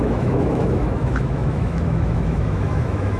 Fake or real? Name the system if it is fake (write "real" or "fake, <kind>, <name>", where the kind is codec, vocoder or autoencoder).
fake, autoencoder, DAC-VAE